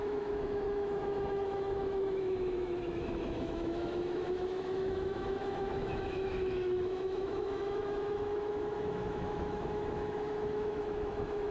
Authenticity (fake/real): fake